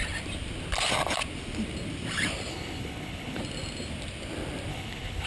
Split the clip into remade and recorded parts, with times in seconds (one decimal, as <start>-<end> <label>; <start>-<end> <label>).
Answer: 0.0-2.5 recorded; 2.5-3.4 remade; 3.4-4.7 recorded; 4.7-5.3 remade